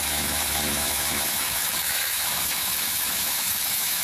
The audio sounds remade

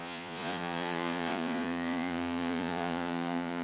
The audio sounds remade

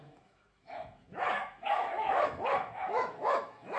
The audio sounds remade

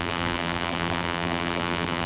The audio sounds remade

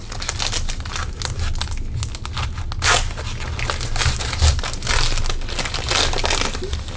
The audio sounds recorded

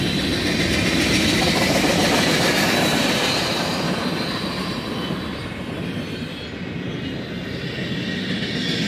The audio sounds recorded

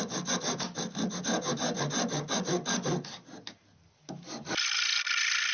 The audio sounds recorded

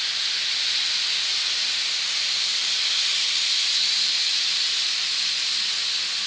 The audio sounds recorded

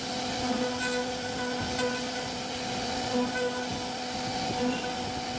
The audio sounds recorded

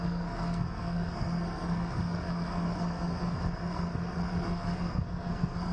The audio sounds remade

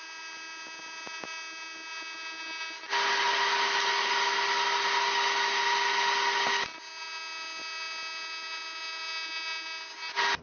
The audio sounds recorded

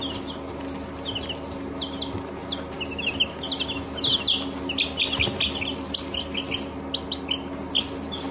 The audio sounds recorded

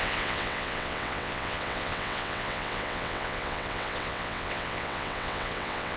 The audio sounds remade